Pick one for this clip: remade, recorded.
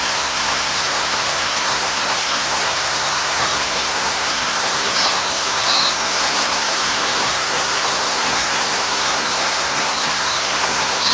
remade